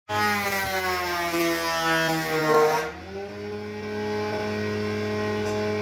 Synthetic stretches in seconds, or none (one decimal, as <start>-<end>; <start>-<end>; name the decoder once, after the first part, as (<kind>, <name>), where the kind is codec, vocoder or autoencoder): none